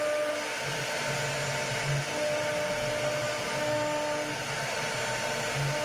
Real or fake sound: real